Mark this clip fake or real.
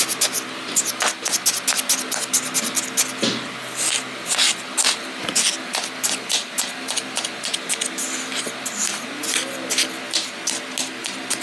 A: real